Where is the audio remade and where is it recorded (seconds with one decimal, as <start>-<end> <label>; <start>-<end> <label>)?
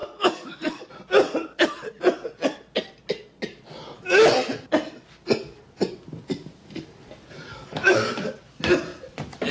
0.0-0.9 remade; 0.9-7.5 recorded; 7.5-8.1 remade; 8.1-9.5 recorded